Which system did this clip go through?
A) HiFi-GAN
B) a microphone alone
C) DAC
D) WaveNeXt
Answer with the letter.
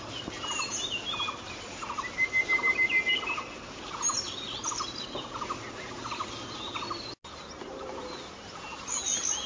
B